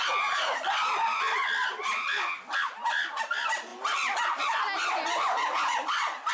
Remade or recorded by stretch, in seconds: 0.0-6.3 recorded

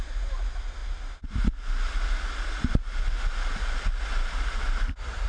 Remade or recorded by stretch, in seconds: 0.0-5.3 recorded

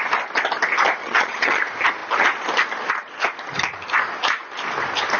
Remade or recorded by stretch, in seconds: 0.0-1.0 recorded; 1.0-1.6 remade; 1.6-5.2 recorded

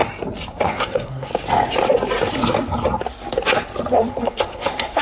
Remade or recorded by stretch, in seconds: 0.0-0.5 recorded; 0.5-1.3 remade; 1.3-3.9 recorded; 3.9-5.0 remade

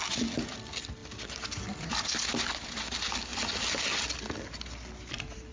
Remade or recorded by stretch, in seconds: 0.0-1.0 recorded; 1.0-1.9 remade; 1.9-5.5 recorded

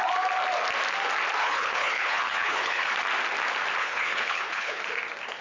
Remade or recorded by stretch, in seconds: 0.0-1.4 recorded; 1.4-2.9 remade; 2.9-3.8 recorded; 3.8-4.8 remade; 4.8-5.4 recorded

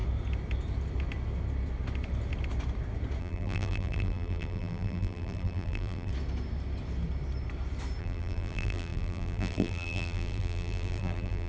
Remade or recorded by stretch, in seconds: 0.0-3.2 recorded; 3.2-6.1 remade; 6.1-8.0 recorded; 8.0-11.5 remade

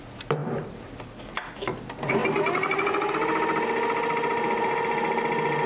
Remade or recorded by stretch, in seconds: 0.0-5.7 recorded